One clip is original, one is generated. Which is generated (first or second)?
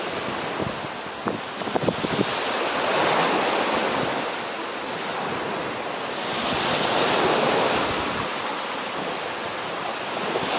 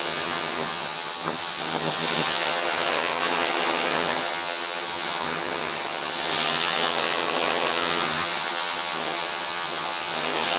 second